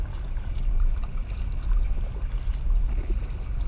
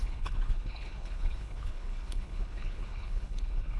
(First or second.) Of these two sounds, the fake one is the second